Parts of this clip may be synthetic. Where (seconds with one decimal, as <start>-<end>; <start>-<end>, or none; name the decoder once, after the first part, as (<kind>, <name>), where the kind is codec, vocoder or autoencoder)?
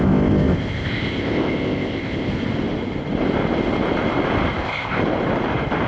0.0-2.3 (codec, ZipCodec); 4.6-5.0